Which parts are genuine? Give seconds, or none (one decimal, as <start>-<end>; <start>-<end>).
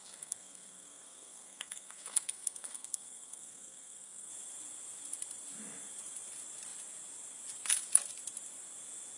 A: 4.3-9.2